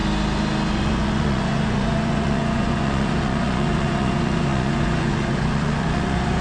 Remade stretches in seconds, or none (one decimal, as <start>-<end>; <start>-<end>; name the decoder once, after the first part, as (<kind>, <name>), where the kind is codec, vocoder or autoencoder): 0.7-6.4 (vocoder, Vocos)